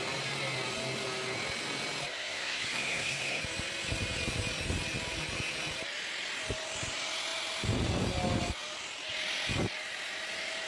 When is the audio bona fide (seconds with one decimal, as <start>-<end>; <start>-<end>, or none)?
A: 0.0-2.1; 3.4-10.7